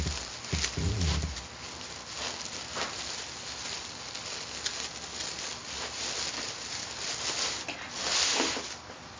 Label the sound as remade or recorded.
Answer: recorded